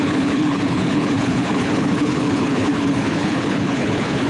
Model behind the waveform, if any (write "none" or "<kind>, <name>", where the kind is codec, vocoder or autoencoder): codec, HILCodec